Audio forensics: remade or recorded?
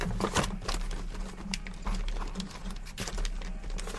recorded